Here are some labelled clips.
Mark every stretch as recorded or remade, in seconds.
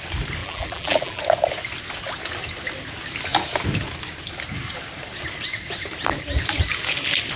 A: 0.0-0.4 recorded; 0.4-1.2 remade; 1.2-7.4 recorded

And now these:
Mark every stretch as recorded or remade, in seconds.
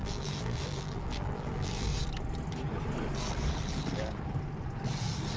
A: 0.0-1.9 remade; 1.9-5.4 recorded